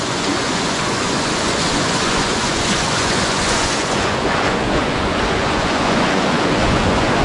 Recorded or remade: remade